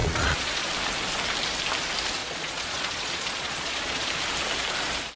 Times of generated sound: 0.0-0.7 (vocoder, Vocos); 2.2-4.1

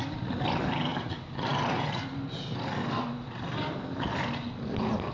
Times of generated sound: none

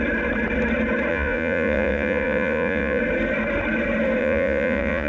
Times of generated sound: 1.1-3.0 (vocoder, Vocos); 4.2-5.1

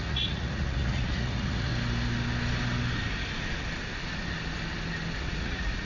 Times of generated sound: 0.0-1.7 (vocoder, Vocos); 5.2-5.9

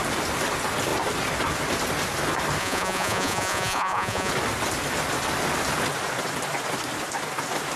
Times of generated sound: 2.6-4.3 (vocoder, Vocos)

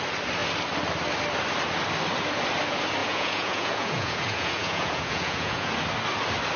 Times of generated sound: 3.0-5.7 (vocoder, Vocos)

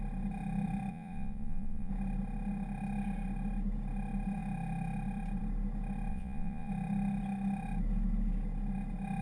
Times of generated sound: 0.9-1.9 (vocoder, Vocos); 6.1-6.7

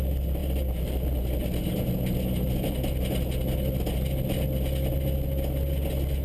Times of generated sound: none